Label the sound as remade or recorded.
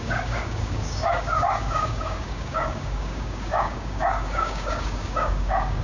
remade